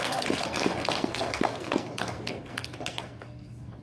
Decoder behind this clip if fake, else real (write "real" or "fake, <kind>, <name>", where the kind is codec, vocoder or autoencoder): fake, codec, SNAC